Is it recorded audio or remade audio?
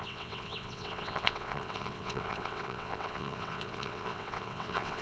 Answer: remade